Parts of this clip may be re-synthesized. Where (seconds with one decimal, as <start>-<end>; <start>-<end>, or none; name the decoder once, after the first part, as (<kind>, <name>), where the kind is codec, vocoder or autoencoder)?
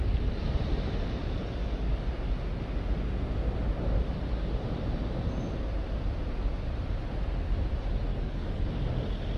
1.6-2.1 (codec, DAC); 8.1-8.7